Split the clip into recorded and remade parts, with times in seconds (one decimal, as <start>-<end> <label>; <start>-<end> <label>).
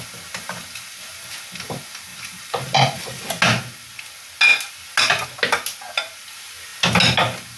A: 0.0-2.1 recorded; 2.1-3.0 remade; 3.0-7.6 recorded